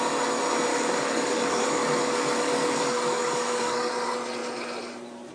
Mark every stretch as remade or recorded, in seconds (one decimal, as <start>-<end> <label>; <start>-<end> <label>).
0.0-0.7 recorded; 0.7-3.9 remade; 3.9-5.3 recorded